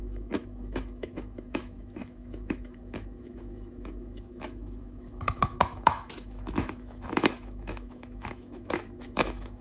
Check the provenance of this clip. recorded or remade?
remade